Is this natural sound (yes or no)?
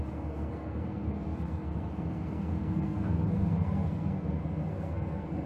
no